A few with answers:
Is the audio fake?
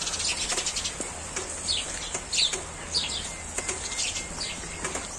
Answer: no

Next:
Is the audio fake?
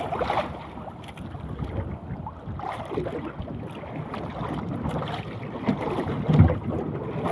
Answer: no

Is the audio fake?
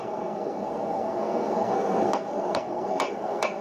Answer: yes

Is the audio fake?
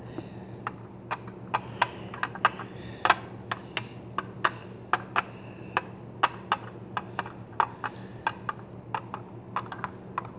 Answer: no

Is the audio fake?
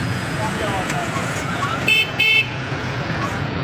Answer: yes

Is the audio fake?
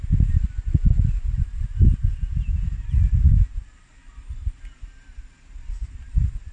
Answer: no